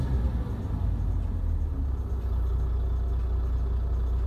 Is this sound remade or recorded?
recorded